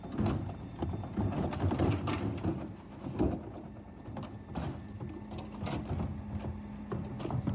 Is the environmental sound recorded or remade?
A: recorded